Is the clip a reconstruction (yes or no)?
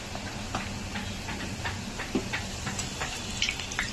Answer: no